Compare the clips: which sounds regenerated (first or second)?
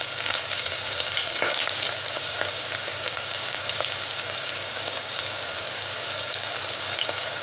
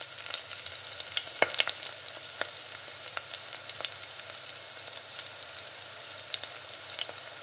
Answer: first